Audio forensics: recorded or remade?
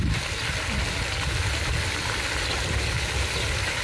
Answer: recorded